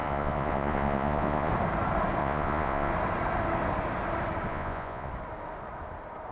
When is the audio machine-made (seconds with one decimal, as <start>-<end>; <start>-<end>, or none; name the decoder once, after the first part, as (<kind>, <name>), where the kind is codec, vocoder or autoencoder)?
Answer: 0.0-1.5 (vocoder, Vocos); 2.2-2.9; 4.5-5.1